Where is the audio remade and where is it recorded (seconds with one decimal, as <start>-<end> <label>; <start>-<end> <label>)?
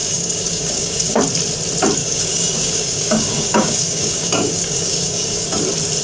0.0-1.2 remade; 1.2-2.0 recorded; 2.0-5.6 remade; 5.6-6.0 recorded